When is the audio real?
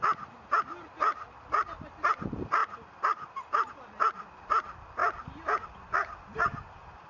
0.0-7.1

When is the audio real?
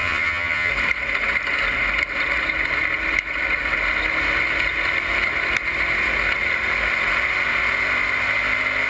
0.7-8.9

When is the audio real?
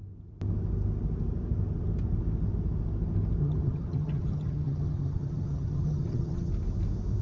0.0-3.4; 6.5-7.2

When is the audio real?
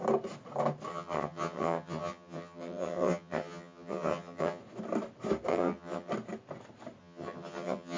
0.0-0.9; 4.6-5.5; 6.1-7.0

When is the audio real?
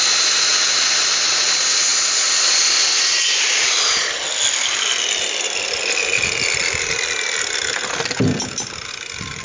0.0-9.4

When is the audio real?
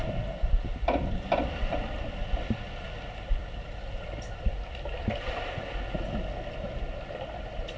0.0-7.8